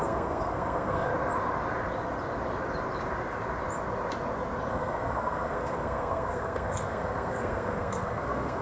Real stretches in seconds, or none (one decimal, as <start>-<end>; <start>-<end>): 1.1-4.7